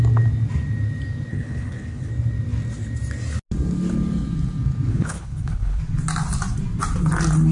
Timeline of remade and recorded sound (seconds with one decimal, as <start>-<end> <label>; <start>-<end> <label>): 0.0-1.3 recorded; 1.3-2.1 remade; 2.1-4.9 recorded; 4.9-5.8 remade; 5.8-7.5 recorded